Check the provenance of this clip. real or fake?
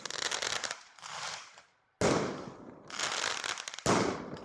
real